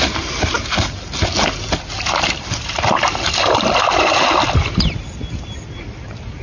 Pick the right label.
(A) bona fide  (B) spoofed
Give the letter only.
A